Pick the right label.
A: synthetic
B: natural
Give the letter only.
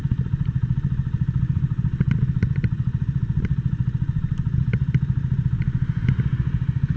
B